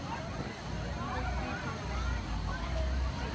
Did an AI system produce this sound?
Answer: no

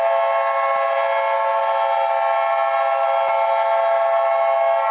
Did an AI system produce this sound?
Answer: no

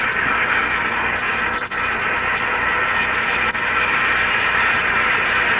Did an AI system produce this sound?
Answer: no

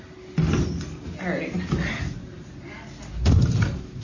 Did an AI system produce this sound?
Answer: no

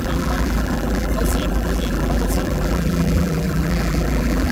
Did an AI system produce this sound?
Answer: yes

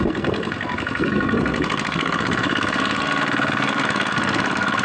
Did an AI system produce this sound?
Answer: yes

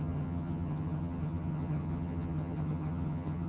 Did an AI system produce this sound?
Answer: yes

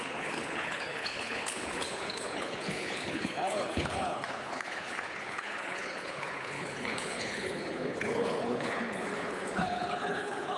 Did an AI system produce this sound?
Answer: yes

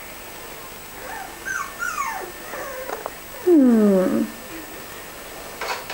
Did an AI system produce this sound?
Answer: no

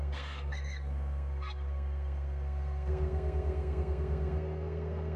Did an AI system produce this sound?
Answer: yes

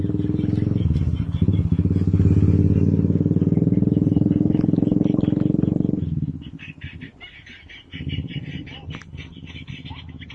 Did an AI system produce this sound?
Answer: no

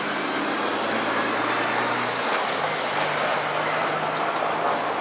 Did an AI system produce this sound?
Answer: no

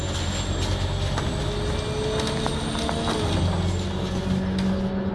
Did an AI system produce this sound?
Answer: no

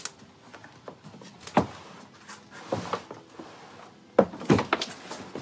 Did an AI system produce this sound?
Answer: no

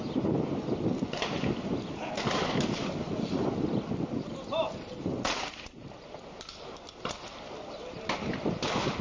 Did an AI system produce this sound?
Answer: no